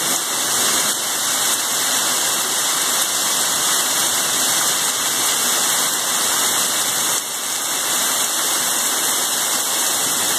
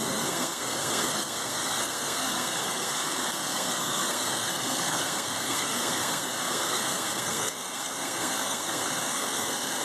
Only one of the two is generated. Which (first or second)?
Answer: second